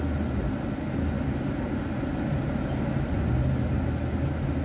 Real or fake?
real